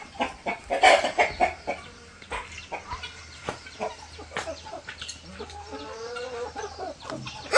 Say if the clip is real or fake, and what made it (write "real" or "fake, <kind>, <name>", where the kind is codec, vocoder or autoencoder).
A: real